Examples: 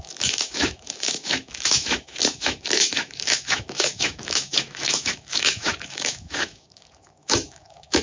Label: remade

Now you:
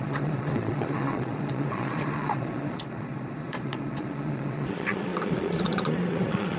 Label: remade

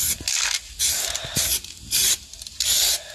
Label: recorded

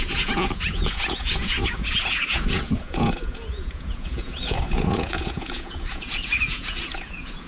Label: remade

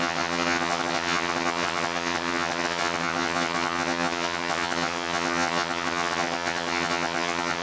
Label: remade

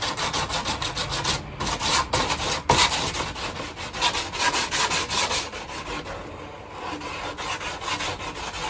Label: recorded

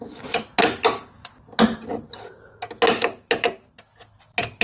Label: recorded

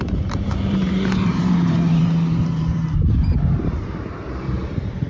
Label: remade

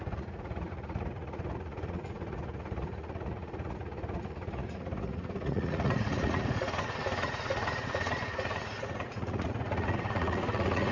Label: remade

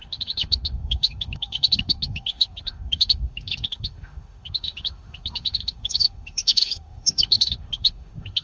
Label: remade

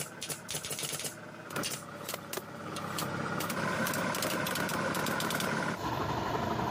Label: recorded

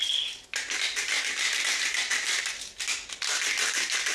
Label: recorded